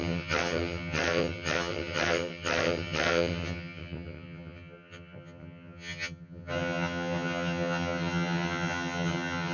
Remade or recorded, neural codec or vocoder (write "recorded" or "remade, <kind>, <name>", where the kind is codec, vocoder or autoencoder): remade, vocoder, HiFi-GAN